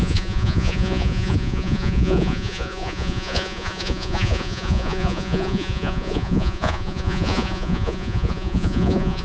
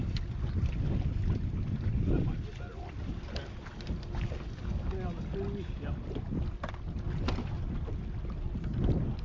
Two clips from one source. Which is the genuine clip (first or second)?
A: second